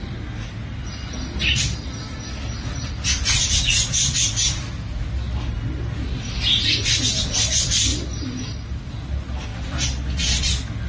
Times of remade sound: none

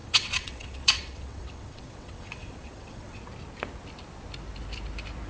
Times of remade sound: 0.0-3.2

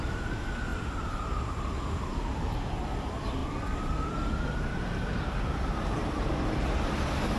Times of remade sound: 0.7-2.4

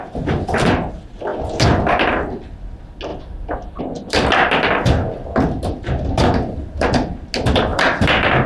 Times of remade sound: 3.1-3.8; 7.7-8.5

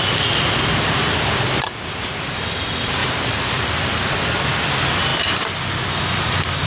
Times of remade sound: 3.0-4.0

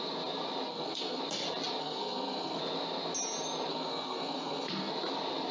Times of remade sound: 0.7-1.2; 1.8-2.6; 3.7-4.9

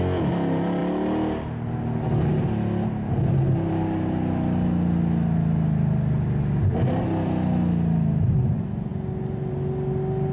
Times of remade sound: none

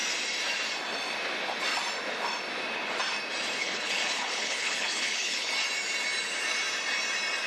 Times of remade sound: 3.6-5.5